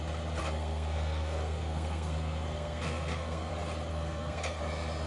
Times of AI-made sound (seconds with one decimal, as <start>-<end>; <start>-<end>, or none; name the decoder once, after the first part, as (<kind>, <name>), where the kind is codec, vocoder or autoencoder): 0.4-3.5 (codec, SNAC); 3.9-4.6